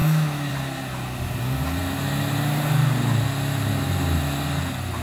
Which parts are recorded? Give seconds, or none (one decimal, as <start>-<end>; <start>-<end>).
0.5-5.0